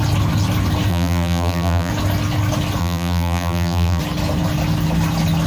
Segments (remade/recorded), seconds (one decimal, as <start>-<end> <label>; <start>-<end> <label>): 0.0-0.9 recorded; 0.9-1.9 remade; 1.9-2.8 recorded; 2.8-4.0 remade; 4.0-5.5 recorded